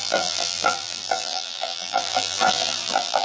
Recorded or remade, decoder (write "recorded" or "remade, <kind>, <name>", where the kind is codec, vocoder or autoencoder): remade, vocoder, BigVGAN v2